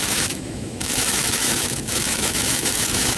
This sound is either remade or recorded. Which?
remade